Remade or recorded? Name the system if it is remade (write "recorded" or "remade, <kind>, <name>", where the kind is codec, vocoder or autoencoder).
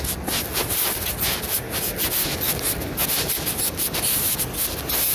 recorded